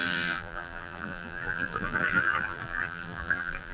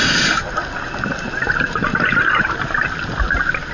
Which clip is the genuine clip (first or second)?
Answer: second